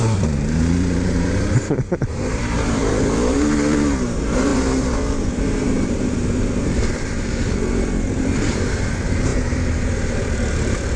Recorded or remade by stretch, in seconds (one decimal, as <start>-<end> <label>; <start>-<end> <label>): 0.0-11.0 remade